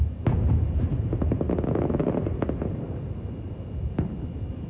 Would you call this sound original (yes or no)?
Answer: yes